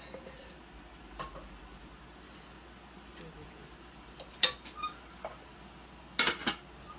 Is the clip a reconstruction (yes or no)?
no